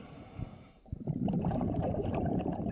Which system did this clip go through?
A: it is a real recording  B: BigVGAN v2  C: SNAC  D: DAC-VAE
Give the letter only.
B